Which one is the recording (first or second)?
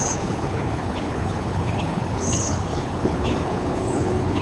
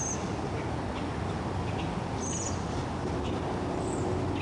second